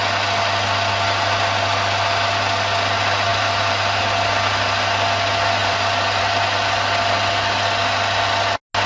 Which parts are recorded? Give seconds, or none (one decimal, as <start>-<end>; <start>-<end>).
0.0-3.3; 4.0-5.6; 6.2-8.9